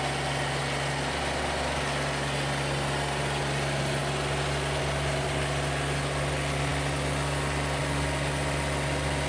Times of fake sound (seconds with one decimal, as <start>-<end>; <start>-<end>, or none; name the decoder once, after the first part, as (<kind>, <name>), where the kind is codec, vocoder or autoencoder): none